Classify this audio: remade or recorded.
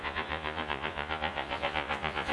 remade